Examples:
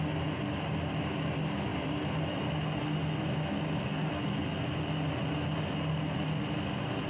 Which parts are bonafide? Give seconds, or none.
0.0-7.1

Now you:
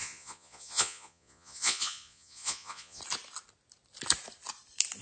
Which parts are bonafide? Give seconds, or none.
3.0-5.0

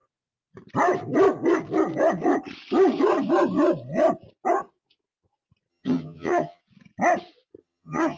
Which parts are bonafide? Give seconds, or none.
0.0-5.7; 6.6-7.6

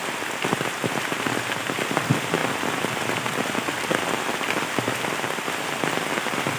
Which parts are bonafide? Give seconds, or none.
0.0-6.6

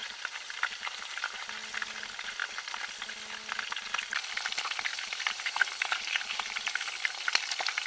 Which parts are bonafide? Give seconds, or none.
1.2-4.9; 6.9-7.9

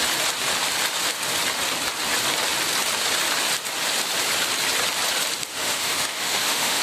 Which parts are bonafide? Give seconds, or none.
0.0-5.5

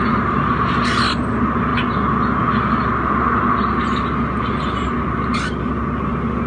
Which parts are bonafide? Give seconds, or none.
0.0-6.5